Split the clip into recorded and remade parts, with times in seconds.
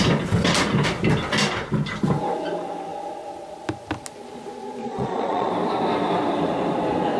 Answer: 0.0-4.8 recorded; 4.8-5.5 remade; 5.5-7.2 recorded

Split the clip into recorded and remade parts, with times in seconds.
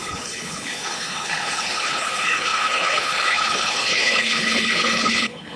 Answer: 0.0-5.6 remade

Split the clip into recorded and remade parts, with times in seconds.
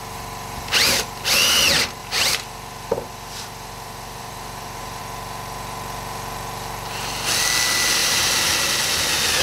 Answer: 0.0-2.0 recorded; 2.0-5.0 remade; 5.0-8.0 recorded; 8.0-8.5 remade; 8.5-9.4 recorded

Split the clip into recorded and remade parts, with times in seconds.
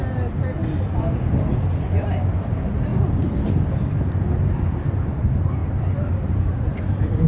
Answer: 0.0-7.3 recorded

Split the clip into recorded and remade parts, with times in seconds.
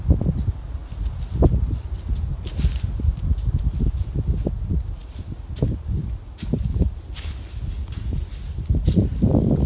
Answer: 0.0-9.7 recorded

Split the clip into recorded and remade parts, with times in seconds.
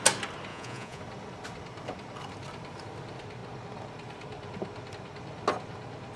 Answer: 0.0-0.5 recorded; 0.5-1.0 remade; 1.0-6.2 recorded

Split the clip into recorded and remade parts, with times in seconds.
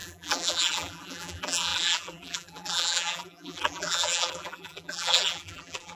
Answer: 0.0-6.0 remade